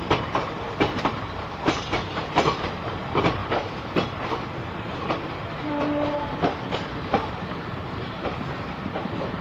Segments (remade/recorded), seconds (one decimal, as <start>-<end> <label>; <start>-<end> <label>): 0.0-9.4 remade